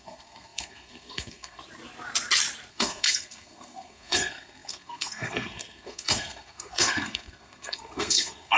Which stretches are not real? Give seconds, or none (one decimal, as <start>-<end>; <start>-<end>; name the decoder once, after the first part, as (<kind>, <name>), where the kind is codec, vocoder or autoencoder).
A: 0.0-1.6 (codec, SNAC); 2.7-8.6